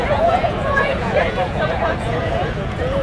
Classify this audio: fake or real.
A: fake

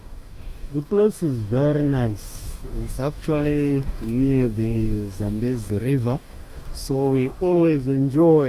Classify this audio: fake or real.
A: fake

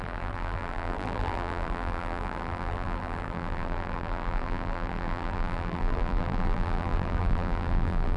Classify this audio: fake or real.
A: fake